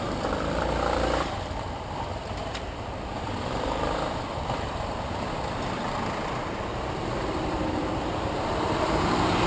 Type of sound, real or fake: fake